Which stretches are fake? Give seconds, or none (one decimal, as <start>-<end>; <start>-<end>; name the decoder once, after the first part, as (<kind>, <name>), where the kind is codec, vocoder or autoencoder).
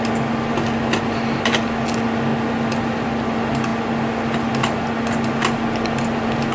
none